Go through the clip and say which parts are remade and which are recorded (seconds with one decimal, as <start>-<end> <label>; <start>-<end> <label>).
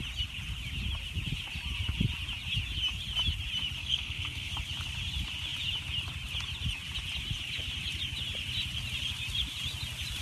0.0-3.8 recorded; 3.8-4.5 remade; 4.5-10.2 recorded